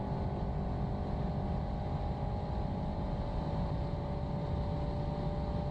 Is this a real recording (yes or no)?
yes